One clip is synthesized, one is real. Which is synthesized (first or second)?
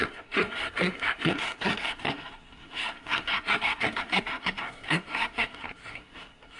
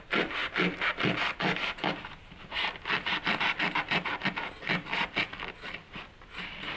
first